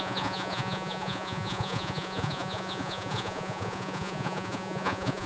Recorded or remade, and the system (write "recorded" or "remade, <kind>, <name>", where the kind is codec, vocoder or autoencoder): remade, vocoder, Vocos